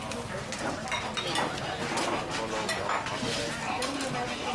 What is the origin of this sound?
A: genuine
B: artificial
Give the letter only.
A